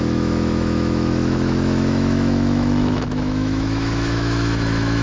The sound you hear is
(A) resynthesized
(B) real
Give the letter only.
A